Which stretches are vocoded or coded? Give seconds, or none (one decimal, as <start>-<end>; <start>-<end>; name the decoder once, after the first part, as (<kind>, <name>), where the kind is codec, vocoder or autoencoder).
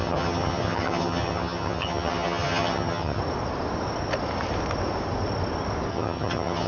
0.0-3.2 (vocoder, HiFi-GAN); 5.9-6.7